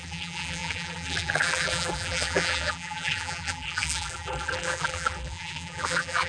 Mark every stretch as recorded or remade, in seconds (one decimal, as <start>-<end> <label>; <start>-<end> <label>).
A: 0.0-6.3 remade